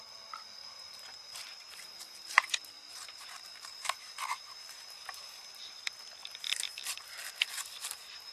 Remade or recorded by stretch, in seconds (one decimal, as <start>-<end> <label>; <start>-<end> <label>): 0.0-0.6 recorded; 0.6-4.7 remade; 4.7-8.3 recorded